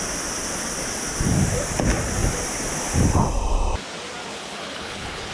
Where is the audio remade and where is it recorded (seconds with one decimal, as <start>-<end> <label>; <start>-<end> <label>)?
0.0-4.3 recorded; 4.3-5.3 remade